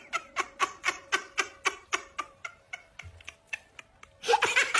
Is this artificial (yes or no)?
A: no